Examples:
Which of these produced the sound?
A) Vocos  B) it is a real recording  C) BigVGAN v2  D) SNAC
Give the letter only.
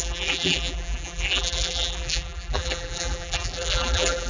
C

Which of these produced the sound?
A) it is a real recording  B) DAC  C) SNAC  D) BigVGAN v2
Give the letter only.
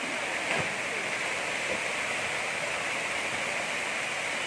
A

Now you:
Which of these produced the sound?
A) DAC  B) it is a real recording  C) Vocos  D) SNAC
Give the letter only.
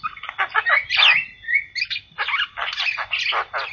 B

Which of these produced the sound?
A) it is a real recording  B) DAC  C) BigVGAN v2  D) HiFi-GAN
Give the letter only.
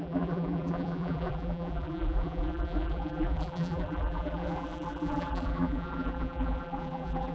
C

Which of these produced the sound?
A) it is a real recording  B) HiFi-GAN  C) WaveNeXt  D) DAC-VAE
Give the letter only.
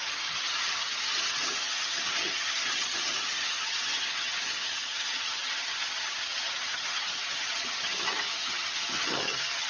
B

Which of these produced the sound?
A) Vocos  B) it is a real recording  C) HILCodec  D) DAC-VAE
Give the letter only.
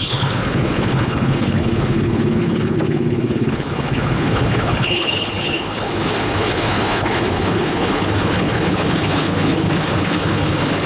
C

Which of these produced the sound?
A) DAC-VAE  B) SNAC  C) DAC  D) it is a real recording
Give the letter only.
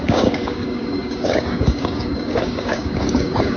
C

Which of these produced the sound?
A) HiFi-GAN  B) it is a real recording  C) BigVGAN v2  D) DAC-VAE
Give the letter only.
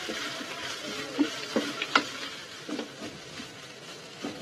C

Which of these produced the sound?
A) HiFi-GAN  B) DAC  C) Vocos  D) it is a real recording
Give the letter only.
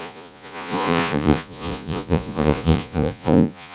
C